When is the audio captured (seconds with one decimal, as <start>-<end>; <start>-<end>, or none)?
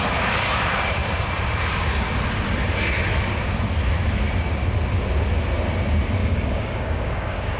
0.0-6.2